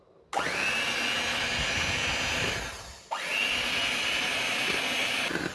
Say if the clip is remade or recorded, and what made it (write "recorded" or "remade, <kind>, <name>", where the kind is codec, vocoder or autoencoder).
recorded